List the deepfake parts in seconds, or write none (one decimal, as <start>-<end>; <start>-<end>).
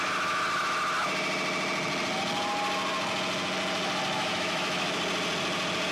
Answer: 4.1-5.0